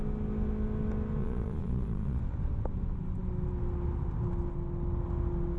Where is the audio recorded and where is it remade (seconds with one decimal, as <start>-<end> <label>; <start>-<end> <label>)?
0.0-1.2 recorded; 1.2-2.2 remade; 2.2-5.6 recorded